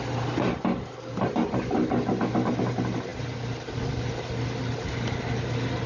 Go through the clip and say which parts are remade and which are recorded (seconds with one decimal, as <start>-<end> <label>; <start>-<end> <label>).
0.0-5.9 recorded